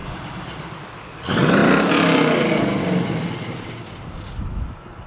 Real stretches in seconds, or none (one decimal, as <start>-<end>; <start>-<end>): 0.8-5.1